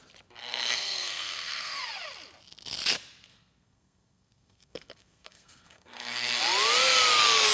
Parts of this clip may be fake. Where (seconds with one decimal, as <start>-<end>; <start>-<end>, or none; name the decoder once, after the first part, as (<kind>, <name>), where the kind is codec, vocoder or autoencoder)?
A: 0.4-1.8 (codec, SNAC); 3.3-6.4